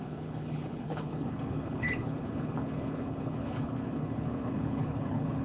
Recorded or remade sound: remade